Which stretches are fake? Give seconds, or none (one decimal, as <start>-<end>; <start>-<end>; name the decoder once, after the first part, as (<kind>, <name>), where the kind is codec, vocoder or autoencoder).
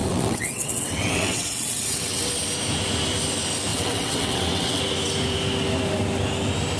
0.0-2.3 (vocoder, WaveNeXt); 3.7-4.8